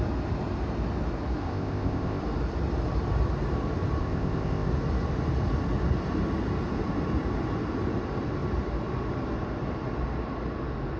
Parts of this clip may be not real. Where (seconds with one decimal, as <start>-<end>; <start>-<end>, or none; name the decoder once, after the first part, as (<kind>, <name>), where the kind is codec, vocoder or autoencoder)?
1.4-2.2 (codec, ZipCodec); 4.0-4.7